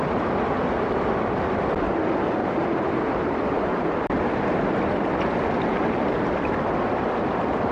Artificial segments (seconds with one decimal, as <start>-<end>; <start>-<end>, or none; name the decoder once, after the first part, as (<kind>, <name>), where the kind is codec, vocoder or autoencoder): 2.4-4.7 (vocoder, BigVGAN v2)